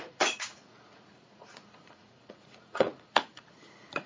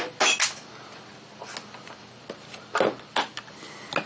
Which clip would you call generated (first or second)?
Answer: first